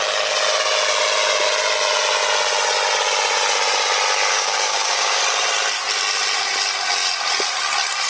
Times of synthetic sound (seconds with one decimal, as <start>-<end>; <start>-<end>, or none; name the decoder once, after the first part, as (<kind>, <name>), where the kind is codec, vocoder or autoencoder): 4.3-5.2 (codec, DAC)